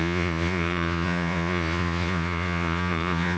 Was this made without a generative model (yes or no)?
no